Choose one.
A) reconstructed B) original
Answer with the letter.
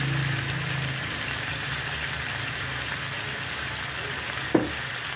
B